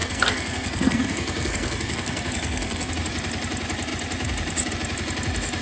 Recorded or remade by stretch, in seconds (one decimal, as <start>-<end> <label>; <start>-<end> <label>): 0.0-2.9 remade; 2.9-5.6 recorded